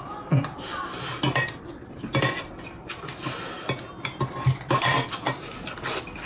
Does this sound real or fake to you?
real